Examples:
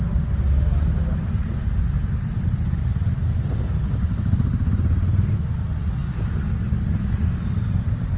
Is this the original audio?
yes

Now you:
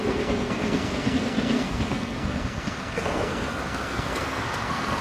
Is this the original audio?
no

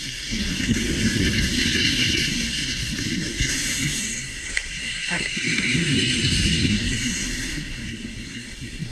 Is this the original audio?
no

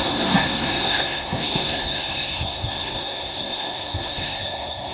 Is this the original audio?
no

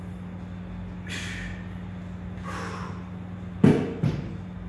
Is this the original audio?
yes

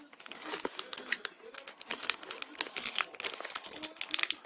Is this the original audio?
yes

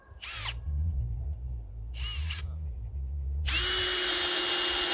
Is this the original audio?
yes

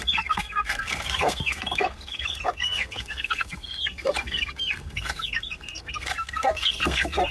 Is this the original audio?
no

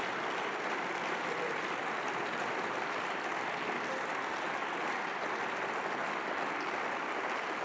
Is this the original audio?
yes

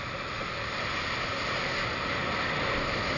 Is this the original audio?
yes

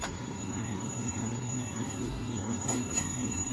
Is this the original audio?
no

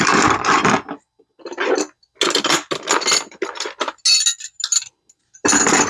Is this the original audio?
yes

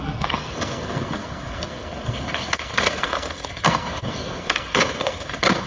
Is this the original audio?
no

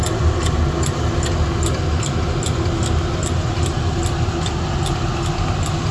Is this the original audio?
yes